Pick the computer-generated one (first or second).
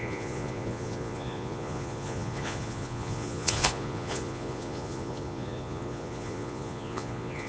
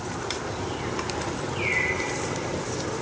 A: first